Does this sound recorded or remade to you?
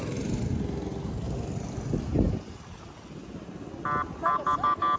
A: recorded